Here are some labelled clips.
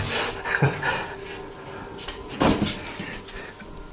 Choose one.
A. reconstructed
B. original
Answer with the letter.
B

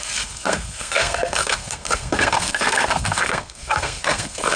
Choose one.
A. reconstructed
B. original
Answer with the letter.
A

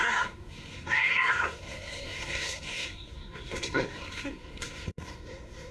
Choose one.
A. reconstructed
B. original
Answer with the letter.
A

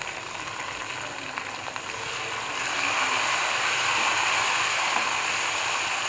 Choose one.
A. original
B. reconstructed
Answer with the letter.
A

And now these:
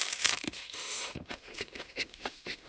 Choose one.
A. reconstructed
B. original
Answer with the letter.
A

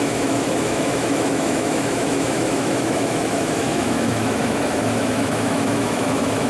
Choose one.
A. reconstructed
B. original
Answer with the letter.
A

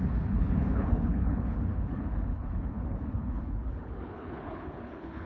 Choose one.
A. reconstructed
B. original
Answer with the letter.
A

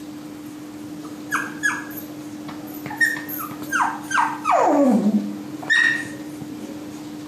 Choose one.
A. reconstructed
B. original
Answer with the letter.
B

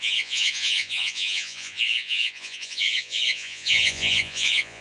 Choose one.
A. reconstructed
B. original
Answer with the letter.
A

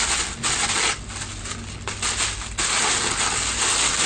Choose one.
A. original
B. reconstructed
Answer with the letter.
A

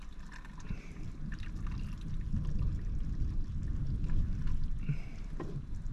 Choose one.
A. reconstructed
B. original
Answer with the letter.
B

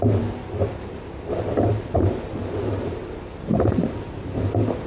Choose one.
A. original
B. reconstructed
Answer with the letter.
B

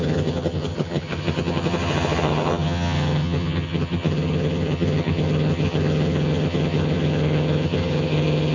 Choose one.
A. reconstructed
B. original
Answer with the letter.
A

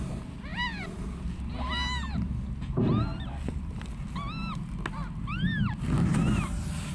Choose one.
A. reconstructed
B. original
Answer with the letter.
B